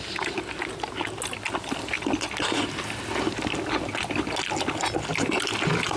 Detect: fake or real real